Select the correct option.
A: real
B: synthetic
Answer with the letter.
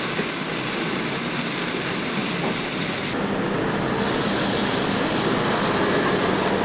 A